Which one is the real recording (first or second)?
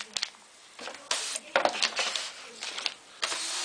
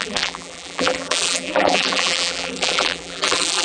first